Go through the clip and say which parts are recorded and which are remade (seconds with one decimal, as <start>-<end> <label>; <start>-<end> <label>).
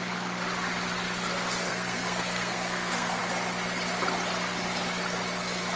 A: 0.0-1.7 recorded; 1.7-3.2 remade; 3.2-5.8 recorded